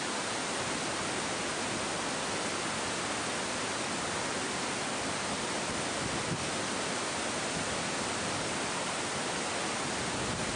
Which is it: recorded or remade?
recorded